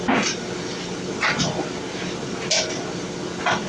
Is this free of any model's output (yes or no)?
yes